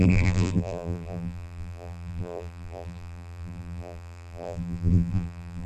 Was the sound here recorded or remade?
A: remade